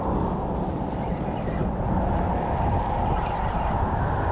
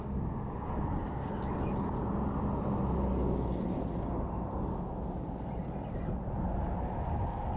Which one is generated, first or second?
first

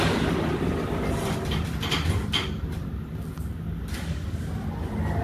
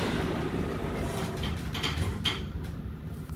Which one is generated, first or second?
second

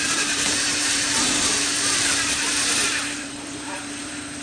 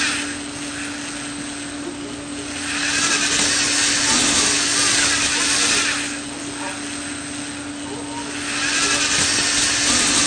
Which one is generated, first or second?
first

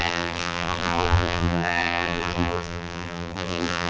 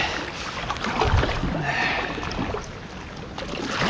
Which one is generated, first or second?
first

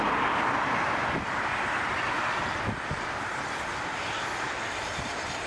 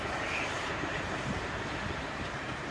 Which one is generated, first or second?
second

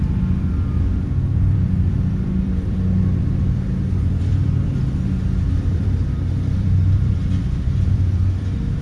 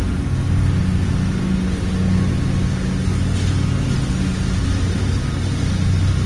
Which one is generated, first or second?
first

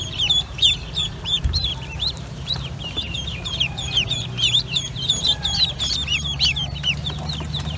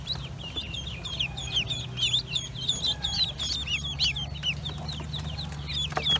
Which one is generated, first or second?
first